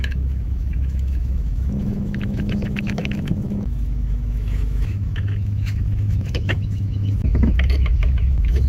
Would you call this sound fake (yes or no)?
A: yes